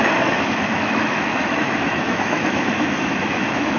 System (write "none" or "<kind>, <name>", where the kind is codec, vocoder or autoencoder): autoencoder, DAC-VAE